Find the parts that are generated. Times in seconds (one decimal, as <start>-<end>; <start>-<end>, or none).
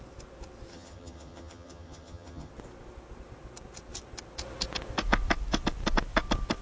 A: 0.7-2.5